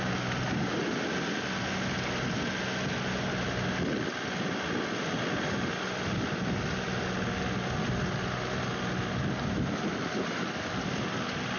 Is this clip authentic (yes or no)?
yes